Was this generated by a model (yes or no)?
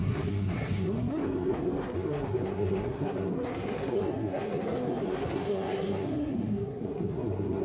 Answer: yes